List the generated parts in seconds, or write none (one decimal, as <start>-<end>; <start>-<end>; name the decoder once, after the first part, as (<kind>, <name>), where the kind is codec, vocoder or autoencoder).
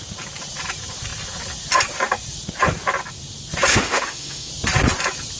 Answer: 3.7-4.5 (autoencoder, DAC-VAE)